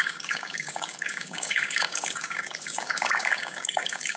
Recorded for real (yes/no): no